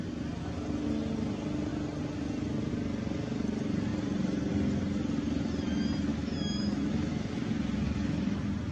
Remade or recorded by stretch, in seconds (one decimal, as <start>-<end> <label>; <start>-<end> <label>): 0.0-6.1 recorded; 6.1-7.3 remade; 7.3-8.7 recorded